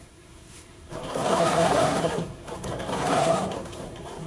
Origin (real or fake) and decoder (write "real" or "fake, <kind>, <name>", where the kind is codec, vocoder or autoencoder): fake, codec, SNAC